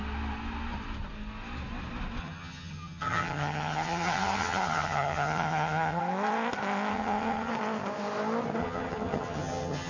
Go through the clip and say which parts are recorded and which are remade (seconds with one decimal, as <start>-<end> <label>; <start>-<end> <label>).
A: 0.0-2.2 recorded; 2.2-6.0 remade; 6.0-6.9 recorded; 6.9-7.5 remade; 7.5-8.6 recorded; 8.6-9.9 remade